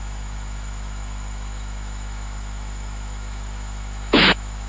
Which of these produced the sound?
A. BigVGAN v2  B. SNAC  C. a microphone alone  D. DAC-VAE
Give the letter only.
D